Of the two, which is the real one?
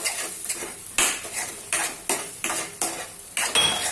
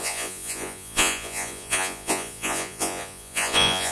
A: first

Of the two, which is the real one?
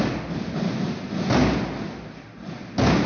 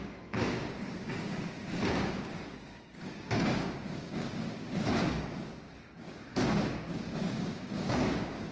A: first